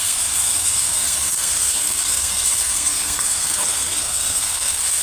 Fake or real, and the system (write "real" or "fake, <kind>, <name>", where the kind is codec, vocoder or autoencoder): fake, codec, SNAC